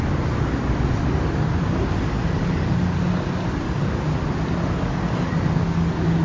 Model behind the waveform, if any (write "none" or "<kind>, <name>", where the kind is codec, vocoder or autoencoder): none